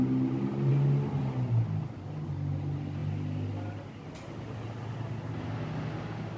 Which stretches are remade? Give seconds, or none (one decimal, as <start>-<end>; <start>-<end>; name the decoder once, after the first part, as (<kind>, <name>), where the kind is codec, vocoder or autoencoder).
none